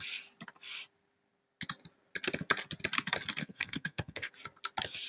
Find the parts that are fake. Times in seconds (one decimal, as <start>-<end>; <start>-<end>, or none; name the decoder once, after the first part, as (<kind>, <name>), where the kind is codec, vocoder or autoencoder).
3.4-4.3 (codec, SNAC)